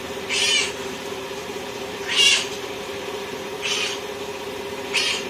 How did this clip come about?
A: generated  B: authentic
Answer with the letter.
A